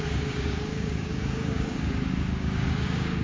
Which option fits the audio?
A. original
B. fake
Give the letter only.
B